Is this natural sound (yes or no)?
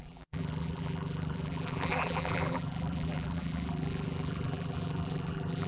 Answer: no